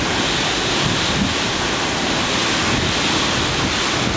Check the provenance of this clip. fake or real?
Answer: real